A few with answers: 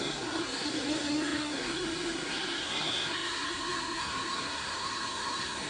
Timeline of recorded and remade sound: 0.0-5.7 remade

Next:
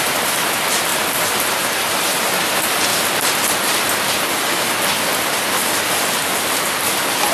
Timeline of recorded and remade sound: 0.0-2.9 remade; 2.9-7.3 recorded

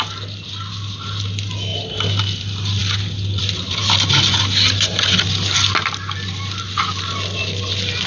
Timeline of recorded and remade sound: 0.0-8.1 recorded

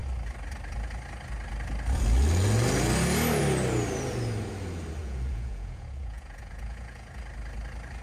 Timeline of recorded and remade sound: 0.0-5.0 recorded; 5.0-7.2 remade; 7.2-8.0 recorded

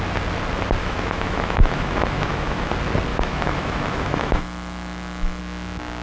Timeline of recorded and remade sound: 0.0-0.8 recorded; 0.8-2.7 remade; 2.7-3.1 recorded; 3.1-5.4 remade; 5.4-6.0 recorded

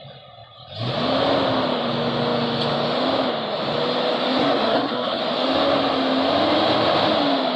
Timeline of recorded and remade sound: 0.0-4.4 recorded; 4.4-5.2 remade; 5.2-7.6 recorded

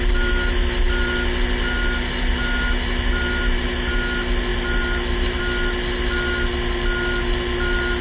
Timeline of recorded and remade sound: 0.0-8.0 recorded